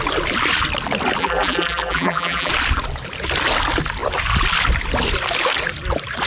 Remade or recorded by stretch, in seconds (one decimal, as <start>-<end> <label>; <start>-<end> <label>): 0.0-1.2 recorded; 1.2-2.5 remade; 2.5-6.3 recorded